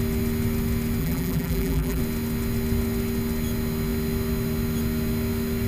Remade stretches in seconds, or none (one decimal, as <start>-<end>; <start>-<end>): 1.0-2.0